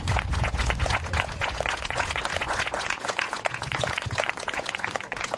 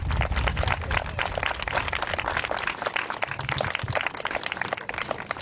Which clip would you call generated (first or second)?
first